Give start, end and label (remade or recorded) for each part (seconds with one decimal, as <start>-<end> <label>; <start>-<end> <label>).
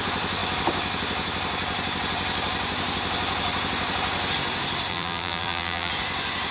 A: 0.0-4.9 recorded; 4.9-5.9 remade; 5.9-6.5 recorded